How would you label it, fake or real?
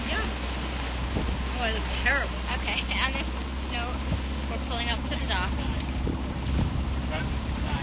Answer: real